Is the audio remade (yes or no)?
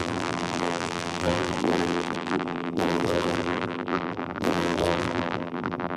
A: yes